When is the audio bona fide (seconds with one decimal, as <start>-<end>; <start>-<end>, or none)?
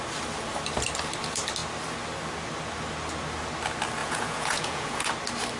0.0-4.0; 5.1-5.6